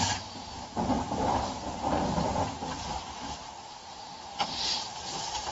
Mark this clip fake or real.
fake